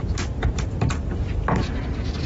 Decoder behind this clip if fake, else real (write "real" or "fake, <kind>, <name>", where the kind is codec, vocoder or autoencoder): real